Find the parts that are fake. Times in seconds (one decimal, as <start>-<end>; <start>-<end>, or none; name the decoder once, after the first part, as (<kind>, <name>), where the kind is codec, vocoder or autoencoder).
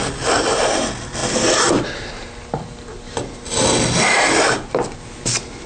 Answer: none